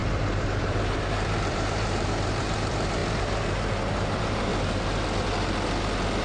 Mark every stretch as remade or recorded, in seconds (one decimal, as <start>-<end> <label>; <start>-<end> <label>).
0.0-4.5 remade; 4.5-6.2 recorded